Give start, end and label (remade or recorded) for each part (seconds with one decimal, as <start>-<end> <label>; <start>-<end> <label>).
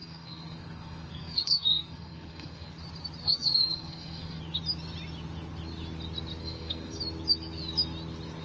0.0-2.7 remade; 2.7-3.2 recorded; 3.2-4.4 remade; 4.4-6.4 recorded; 6.4-7.0 remade; 7.0-8.4 recorded